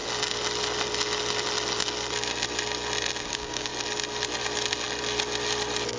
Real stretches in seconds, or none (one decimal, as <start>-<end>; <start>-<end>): 0.0-3.3; 3.7-6.0